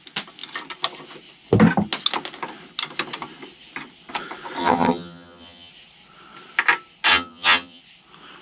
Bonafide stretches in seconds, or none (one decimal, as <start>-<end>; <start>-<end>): 0.0-4.6; 5.7-7.1; 7.8-8.4